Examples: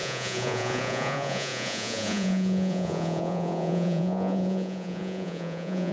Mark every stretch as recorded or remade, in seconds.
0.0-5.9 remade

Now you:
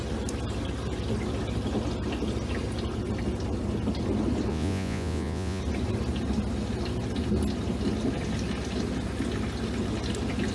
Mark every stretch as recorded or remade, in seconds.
0.0-4.5 recorded; 4.5-5.6 remade; 5.6-10.5 recorded

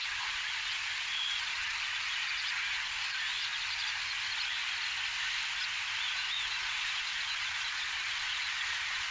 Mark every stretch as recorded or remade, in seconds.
0.0-3.3 remade; 3.3-6.0 recorded; 6.0-9.1 remade

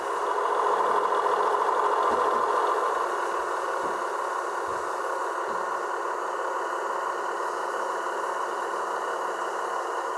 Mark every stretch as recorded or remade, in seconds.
0.0-10.2 recorded